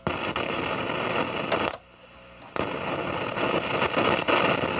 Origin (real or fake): real